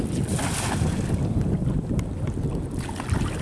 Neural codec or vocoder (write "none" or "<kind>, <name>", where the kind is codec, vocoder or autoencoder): none